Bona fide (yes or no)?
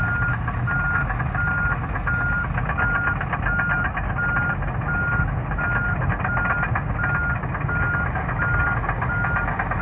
yes